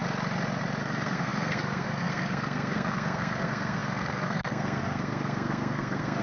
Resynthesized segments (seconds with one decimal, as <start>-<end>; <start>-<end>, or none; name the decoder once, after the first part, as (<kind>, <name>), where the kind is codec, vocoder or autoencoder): 0.8-6.2 (codec, SNAC)